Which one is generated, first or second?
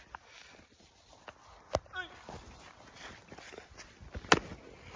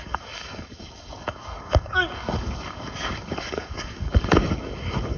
second